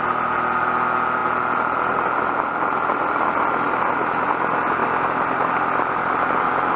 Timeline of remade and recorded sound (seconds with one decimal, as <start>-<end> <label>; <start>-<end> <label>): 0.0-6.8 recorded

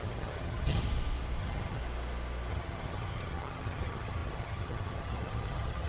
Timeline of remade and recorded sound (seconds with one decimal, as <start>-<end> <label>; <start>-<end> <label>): 0.0-0.8 remade; 0.8-1.4 recorded; 1.4-1.8 remade; 1.8-2.5 recorded; 2.5-5.9 remade

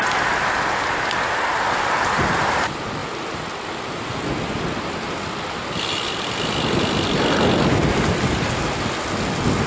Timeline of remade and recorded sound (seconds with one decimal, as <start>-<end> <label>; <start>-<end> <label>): 0.0-9.7 recorded

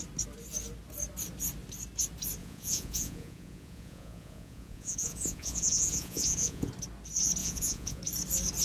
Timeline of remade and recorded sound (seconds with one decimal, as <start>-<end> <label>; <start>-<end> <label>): 0.0-2.4 recorded; 2.4-6.7 remade; 6.7-7.4 recorded; 7.4-8.0 remade; 8.0-8.6 recorded